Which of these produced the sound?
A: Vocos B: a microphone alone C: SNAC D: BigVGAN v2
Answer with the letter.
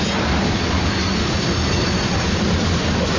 B